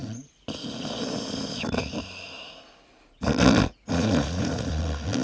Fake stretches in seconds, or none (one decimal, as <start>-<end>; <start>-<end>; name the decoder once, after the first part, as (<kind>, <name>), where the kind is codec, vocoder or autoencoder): 3.7-4.8 (vocoder, Vocos)